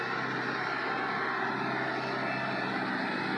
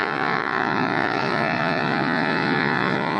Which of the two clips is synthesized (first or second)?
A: second